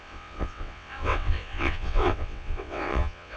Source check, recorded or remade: remade